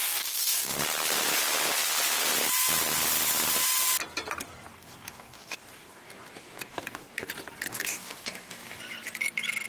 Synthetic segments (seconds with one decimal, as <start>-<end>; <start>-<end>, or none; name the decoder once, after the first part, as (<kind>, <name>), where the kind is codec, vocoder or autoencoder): 0.0-0.8 (codec, DAC); 4.7-7.3; 7.7-8.8